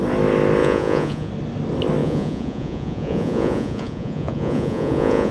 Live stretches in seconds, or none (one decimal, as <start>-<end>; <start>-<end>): 0.0-0.6; 1.3-2.0